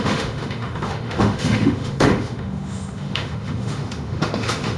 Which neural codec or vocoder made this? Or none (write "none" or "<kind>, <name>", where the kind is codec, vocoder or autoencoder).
autoencoder, DAC-VAE